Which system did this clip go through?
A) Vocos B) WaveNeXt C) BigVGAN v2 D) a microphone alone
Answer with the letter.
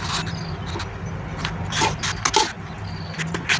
D